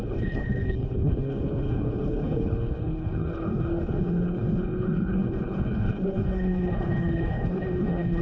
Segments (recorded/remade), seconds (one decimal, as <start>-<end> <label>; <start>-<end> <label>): 0.0-8.2 remade